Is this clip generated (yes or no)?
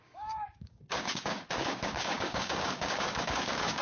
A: yes